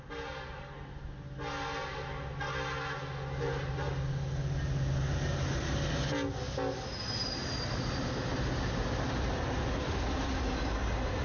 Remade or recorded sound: recorded